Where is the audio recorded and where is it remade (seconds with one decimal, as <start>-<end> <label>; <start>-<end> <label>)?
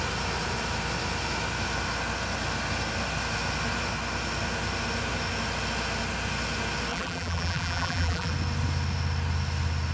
0.0-6.9 recorded; 6.9-8.3 remade; 8.3-9.9 recorded